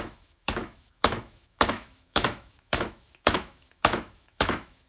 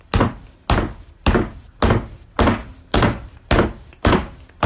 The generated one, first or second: first